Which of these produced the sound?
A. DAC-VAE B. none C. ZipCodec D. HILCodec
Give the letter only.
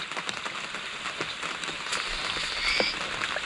B